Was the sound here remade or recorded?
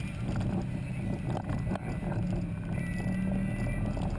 recorded